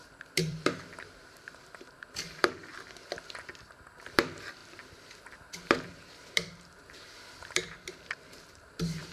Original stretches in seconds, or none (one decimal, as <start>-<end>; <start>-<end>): none